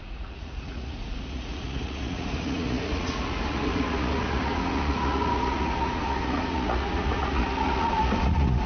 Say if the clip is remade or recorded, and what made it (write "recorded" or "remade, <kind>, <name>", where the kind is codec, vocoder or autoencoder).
remade, vocoder, Vocos